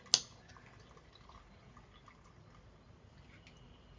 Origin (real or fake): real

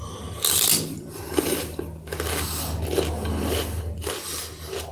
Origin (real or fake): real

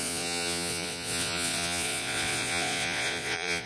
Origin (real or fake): fake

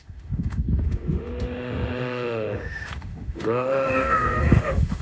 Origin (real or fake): fake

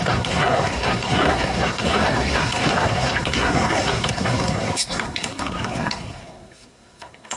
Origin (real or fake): fake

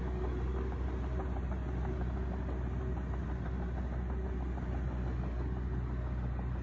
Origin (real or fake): real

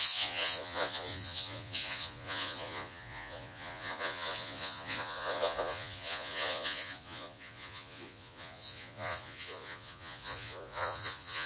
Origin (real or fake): fake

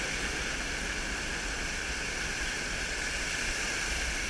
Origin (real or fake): real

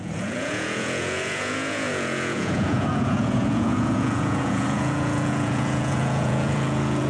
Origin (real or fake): fake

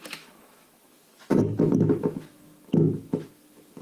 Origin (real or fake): fake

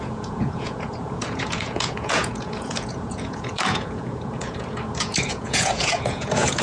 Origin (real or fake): fake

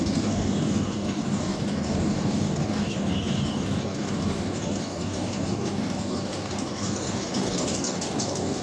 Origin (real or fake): fake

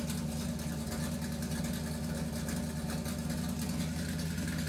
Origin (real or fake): real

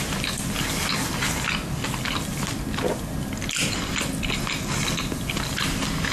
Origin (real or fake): real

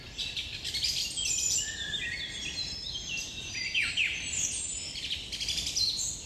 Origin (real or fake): fake